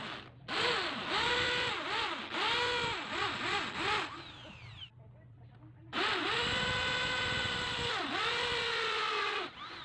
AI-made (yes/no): no